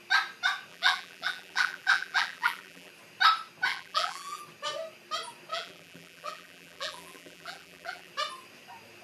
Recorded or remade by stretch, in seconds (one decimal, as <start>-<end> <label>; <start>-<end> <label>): 0.0-0.7 recorded; 0.7-2.9 remade; 2.9-3.7 recorded; 3.7-4.4 remade; 4.4-5.5 recorded; 5.5-8.1 remade; 8.1-9.0 recorded

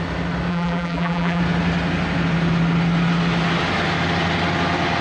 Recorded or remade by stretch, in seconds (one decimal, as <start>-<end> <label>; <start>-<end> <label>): 0.0-0.5 recorded; 0.5-1.4 remade; 1.4-5.0 recorded

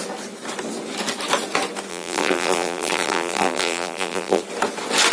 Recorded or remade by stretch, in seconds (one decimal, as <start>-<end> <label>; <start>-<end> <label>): 0.0-1.9 recorded; 1.9-4.4 remade; 4.4-5.1 recorded